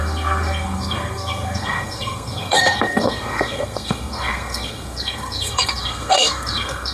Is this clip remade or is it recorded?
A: remade